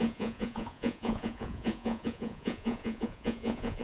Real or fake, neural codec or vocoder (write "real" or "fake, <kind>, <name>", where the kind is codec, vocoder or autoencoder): fake, vocoder, Vocos